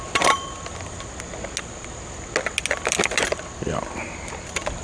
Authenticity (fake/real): real